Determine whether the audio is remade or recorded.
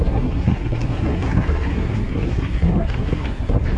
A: remade